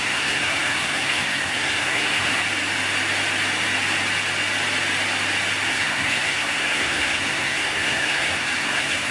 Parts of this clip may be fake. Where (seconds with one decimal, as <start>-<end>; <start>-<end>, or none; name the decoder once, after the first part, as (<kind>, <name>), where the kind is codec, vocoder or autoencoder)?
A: 0.0-2.4 (codec, SNAC); 5.7-9.1